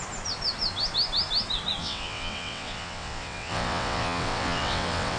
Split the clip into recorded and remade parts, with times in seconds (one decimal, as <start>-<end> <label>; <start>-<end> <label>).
0.0-1.8 recorded; 1.8-5.2 remade